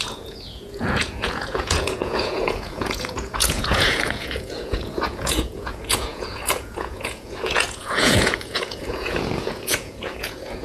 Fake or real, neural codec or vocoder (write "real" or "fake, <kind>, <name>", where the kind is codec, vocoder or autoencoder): fake, vocoder, Vocos